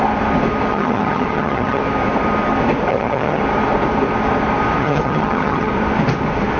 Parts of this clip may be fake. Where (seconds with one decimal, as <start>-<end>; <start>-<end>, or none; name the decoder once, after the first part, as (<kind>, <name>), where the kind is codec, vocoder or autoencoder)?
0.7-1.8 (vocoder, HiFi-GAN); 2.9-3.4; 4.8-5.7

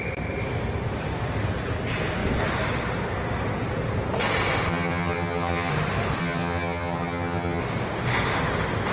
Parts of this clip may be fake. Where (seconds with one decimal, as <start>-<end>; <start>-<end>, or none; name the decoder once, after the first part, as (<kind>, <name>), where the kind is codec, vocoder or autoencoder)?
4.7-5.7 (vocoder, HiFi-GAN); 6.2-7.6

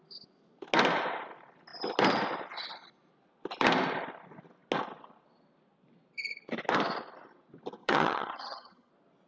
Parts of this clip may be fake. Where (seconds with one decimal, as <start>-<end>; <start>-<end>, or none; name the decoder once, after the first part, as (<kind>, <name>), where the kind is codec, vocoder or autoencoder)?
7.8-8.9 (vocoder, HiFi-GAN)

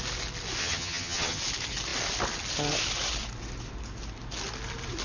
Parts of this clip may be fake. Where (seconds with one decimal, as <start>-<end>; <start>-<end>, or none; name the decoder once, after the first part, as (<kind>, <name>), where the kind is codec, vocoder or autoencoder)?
0.6-1.4 (vocoder, HiFi-GAN)

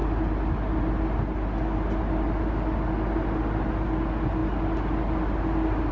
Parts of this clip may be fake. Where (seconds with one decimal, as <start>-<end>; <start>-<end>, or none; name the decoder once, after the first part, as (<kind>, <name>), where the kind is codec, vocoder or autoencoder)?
none